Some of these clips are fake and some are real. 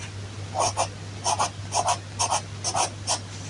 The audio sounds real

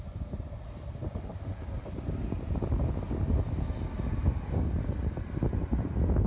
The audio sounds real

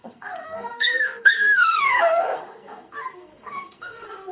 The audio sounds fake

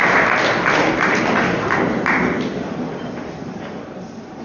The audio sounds real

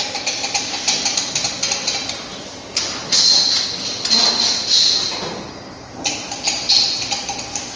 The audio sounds real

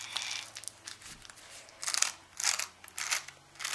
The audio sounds real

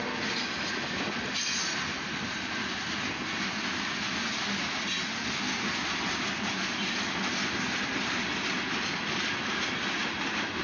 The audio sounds real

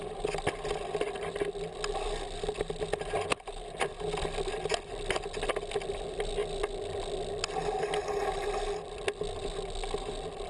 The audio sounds real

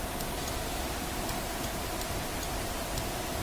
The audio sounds real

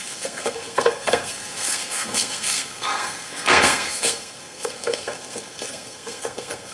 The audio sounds fake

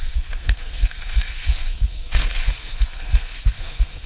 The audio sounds fake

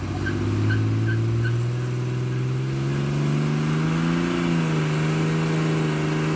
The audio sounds real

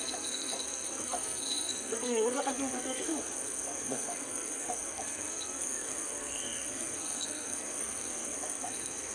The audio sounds fake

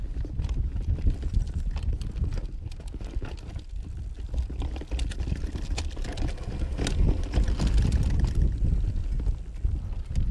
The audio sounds real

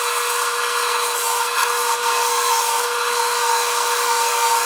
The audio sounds fake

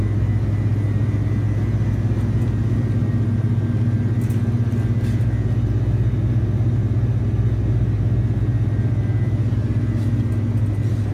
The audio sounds real